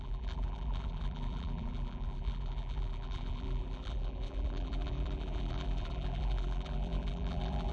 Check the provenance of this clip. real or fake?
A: fake